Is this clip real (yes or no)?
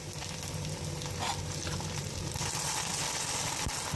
yes